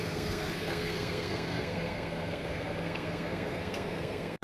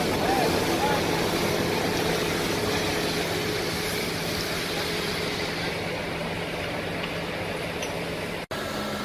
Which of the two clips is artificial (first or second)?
first